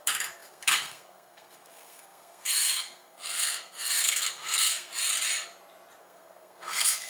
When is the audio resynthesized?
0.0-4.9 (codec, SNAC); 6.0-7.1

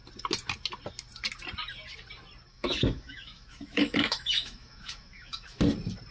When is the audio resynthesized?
2.5-5.6 (autoencoder, DAC-VAE)

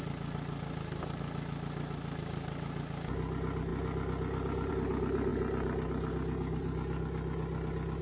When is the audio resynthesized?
none

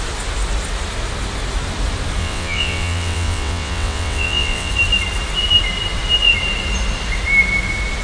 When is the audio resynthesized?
2.2-4.7 (vocoder, WaveNeXt)

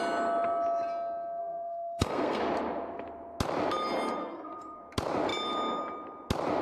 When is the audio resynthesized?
1.4-2.4 (codec, SNAC); 4.2-4.8

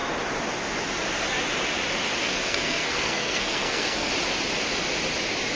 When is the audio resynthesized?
2.2-4.1 (codec, SNAC)

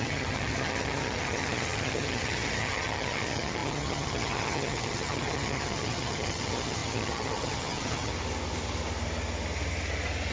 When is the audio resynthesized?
0.0-8.1 (vocoder, HiFi-GAN)

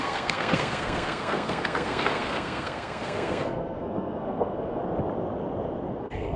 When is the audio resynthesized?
0.0-4.8 (codec, SNAC); 6.0-6.4